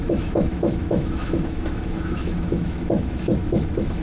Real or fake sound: fake